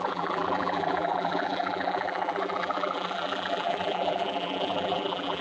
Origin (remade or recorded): remade